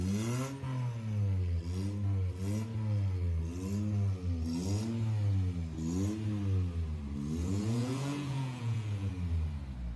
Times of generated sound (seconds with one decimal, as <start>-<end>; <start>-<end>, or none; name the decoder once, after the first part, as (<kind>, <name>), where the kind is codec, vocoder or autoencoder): 7.4-9.1 (vocoder, Vocos)